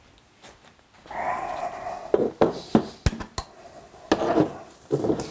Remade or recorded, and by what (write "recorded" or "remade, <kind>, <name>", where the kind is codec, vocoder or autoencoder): recorded